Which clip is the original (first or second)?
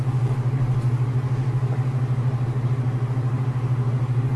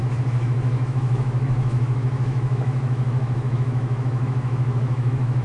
first